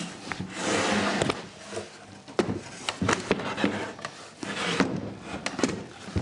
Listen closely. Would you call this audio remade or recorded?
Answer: recorded